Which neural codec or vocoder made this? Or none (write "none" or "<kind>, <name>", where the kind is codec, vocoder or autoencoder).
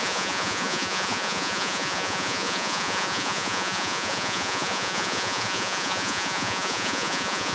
vocoder, Vocos